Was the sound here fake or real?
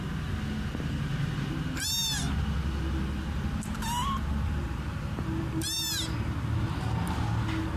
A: real